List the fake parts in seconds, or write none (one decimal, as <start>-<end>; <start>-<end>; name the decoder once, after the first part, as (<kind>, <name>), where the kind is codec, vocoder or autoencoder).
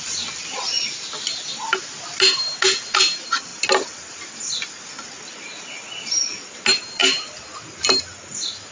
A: none